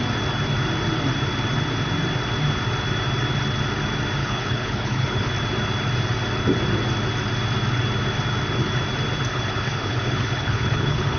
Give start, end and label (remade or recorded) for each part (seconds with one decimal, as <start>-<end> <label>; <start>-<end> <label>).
0.0-4.2 recorded; 4.2-5.3 remade; 5.3-9.3 recorded; 9.3-11.2 remade